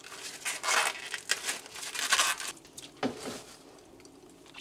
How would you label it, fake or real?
real